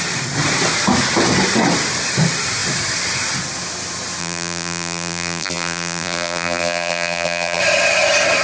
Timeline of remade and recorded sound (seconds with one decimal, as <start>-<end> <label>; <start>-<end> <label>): 0.0-4.2 recorded; 4.2-7.6 remade; 7.6-8.4 recorded